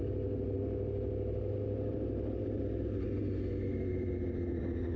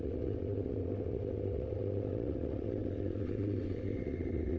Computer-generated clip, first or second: second